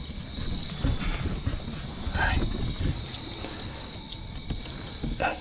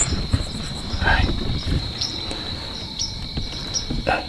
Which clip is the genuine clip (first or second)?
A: first